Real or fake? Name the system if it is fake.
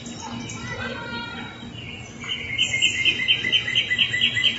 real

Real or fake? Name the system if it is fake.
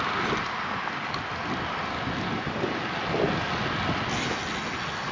real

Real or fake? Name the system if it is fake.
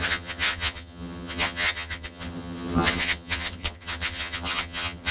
fake, vocoder, HiFi-GAN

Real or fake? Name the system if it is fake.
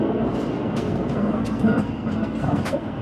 fake, codec, SNAC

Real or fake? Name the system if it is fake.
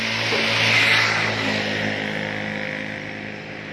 real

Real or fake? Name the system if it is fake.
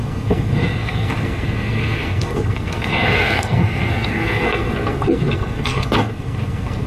fake, codec, SNAC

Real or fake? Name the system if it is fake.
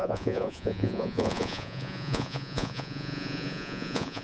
fake, vocoder, Vocos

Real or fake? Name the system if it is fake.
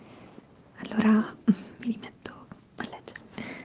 real